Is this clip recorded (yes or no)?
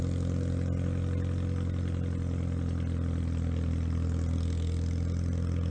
yes